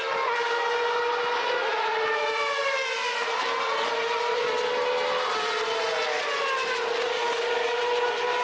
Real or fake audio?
real